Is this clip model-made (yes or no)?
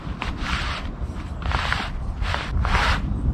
yes